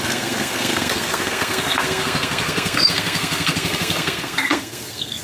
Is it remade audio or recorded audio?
remade